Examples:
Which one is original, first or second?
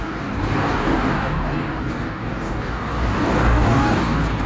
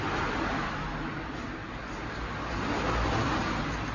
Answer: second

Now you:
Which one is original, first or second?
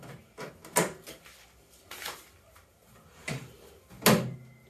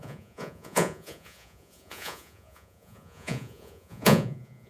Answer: first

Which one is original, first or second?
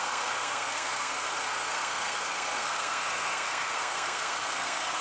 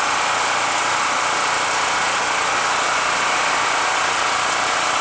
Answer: second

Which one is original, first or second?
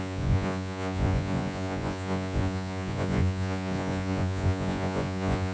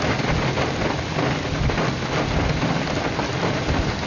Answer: second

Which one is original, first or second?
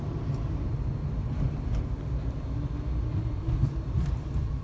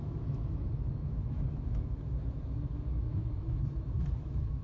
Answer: first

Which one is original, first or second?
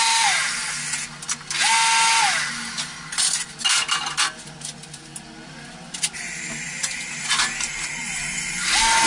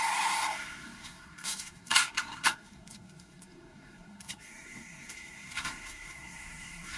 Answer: first